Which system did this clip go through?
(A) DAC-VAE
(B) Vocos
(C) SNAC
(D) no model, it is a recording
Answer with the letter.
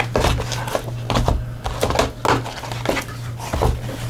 D